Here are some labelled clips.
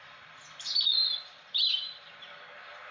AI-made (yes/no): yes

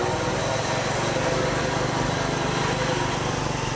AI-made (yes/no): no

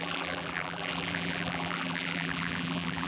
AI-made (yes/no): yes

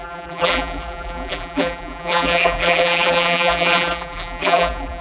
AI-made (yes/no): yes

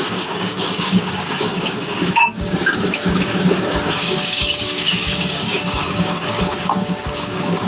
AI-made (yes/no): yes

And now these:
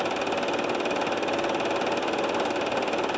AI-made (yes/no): no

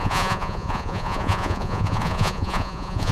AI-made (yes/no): yes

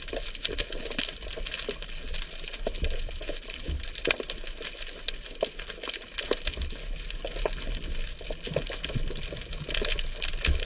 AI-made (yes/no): no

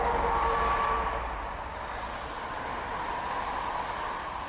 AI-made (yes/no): no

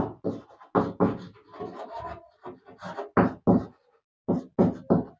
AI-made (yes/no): no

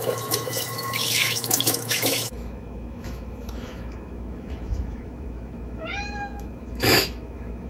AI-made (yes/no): yes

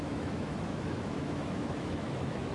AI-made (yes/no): yes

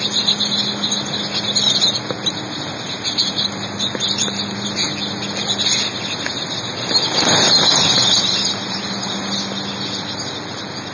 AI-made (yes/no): no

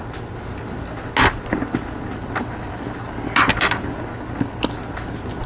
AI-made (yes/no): no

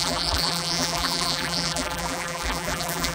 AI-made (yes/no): yes